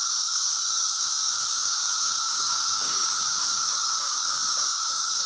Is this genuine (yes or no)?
no